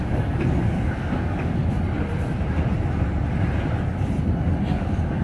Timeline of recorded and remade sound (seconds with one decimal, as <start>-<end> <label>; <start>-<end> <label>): 0.0-1.6 remade; 1.6-4.7 recorded; 4.7-5.2 remade